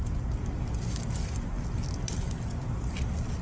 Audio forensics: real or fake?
real